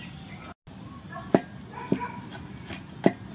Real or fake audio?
real